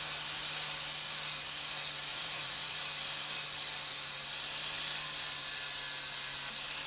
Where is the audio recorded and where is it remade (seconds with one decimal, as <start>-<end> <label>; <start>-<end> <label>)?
0.0-2.1 recorded; 2.1-2.8 remade; 2.8-6.9 recorded